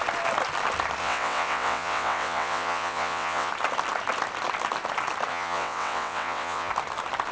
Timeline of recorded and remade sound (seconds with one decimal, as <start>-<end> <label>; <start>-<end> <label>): 0.0-1.0 recorded; 1.0-3.5 remade; 3.5-5.3 recorded; 5.3-6.7 remade; 6.7-7.3 recorded

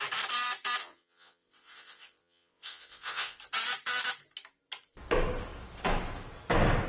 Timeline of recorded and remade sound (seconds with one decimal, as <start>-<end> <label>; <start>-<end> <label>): 0.0-0.8 recorded; 0.8-3.4 remade; 3.4-6.9 recorded

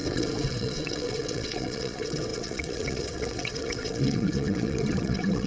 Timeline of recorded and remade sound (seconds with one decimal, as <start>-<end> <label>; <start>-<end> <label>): 0.0-5.5 remade